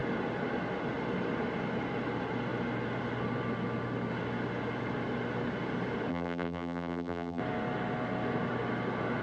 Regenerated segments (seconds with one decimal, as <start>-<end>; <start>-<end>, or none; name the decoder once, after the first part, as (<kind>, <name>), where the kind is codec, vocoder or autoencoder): 6.1-7.4 (vocoder, BigVGAN v2)